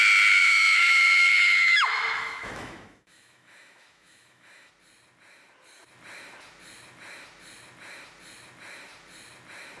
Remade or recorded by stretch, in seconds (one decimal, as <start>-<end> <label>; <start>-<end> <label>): 0.0-0.4 recorded; 0.4-4.7 remade; 4.7-9.8 recorded